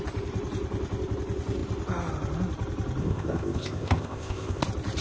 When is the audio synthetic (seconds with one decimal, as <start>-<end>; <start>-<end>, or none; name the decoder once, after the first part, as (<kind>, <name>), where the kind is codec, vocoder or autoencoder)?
3.0-4.6 (codec, ZipCodec)